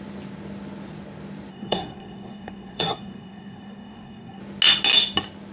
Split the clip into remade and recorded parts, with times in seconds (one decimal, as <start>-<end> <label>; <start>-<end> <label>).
0.0-1.5 recorded; 1.5-4.4 remade; 4.4-5.5 recorded